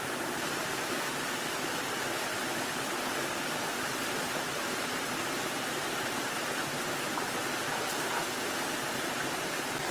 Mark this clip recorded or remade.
recorded